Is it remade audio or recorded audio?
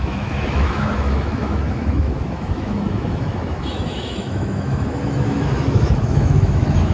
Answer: remade